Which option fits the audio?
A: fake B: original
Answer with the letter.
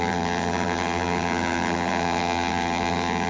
A